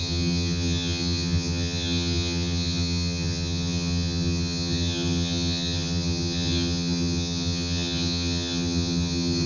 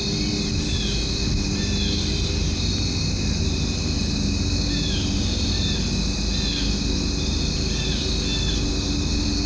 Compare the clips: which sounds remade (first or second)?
first